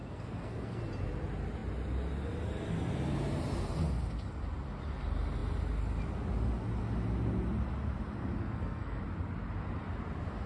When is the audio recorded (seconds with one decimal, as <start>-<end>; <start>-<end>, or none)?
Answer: 0.8-8.4; 9.0-10.5